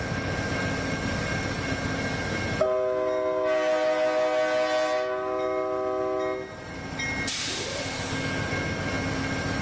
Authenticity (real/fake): real